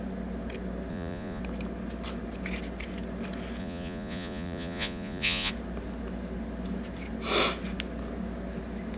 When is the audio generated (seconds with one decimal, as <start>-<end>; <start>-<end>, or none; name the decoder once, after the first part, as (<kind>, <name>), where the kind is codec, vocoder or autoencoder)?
0.9-1.4 (vocoder, Vocos); 3.6-5.5